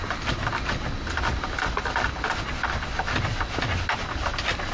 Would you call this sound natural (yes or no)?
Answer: yes